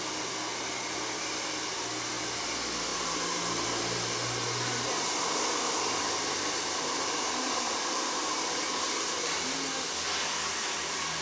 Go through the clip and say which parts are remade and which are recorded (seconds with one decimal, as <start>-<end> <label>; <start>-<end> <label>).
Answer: 0.0-11.2 remade